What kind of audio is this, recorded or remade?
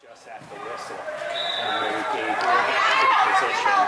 recorded